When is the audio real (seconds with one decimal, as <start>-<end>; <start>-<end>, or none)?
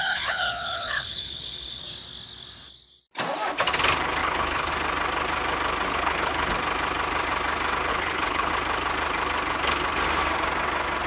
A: 1.8-4.2; 4.7-5.9; 6.5-7.9; 8.5-11.1